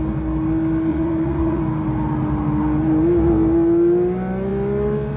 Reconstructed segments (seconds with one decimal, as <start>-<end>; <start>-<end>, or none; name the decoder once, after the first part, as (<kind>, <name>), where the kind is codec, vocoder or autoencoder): 0.9-1.6 (vocoder, Vocos)